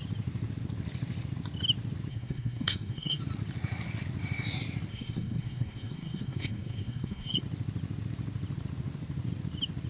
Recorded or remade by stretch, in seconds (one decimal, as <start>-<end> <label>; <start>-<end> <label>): 0.0-2.1 recorded; 2.1-3.2 remade; 3.2-4.9 recorded; 4.9-7.4 remade; 7.4-9.9 recorded